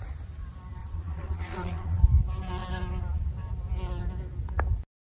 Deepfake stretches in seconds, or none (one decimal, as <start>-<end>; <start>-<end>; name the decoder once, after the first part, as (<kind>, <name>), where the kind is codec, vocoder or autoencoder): 0.8-2.0 (vocoder, Vocos)